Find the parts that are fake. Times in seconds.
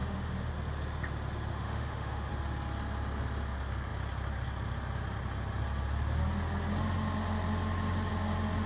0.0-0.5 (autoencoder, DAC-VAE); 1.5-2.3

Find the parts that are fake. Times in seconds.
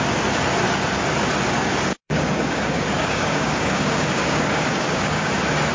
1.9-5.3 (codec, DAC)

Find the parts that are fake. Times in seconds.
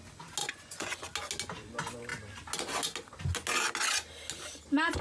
0.4-1.0 (vocoder, Vocos)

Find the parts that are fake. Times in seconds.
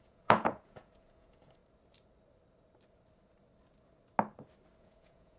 0.0-1.6 (vocoder, Vocos); 4.8-5.4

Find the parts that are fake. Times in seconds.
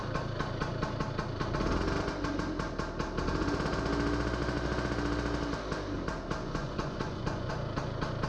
6.4-7.5 (vocoder, Vocos)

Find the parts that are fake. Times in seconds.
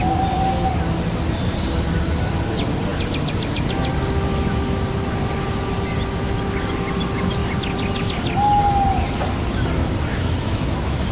10.1-11.1 (autoencoder, DAC-VAE)